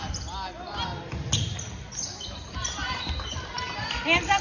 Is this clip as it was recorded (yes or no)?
yes